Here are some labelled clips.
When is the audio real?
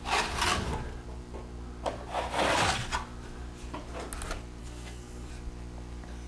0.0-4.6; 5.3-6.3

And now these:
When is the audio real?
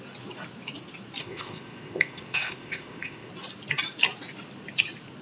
0.0-1.2; 3.3-5.2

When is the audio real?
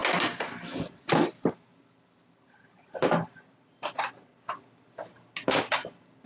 3.8-6.3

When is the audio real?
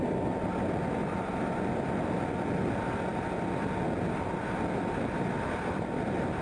0.0-6.4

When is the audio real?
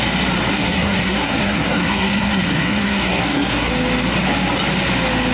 0.0-0.5; 3.7-5.3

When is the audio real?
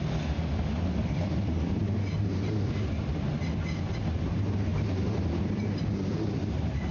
0.0-6.9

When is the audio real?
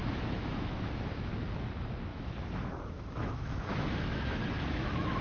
1.3-2.1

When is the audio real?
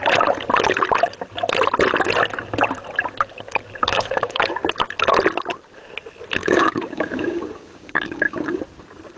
0.0-3.9; 4.4-6.4; 8.6-9.2